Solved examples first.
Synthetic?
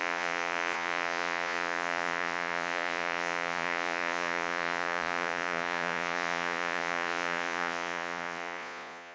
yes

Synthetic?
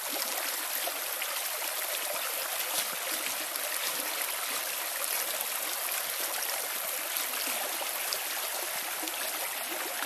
no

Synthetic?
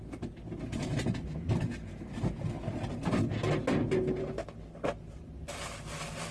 no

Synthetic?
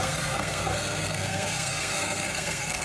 yes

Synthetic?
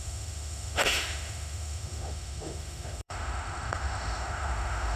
yes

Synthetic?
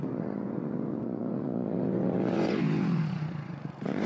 yes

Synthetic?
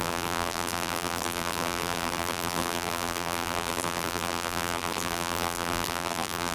yes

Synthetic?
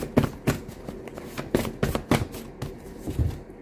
no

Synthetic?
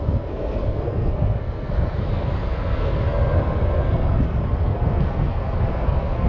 yes